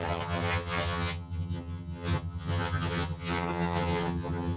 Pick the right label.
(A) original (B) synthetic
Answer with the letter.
B